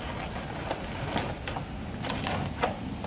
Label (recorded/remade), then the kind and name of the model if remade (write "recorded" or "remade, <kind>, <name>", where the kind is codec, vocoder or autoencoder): recorded